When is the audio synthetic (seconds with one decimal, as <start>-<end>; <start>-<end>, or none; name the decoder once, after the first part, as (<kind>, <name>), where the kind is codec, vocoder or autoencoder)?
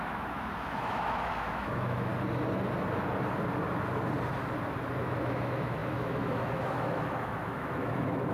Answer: 0.0-2.1 (autoencoder, DAC-VAE); 5.0-8.3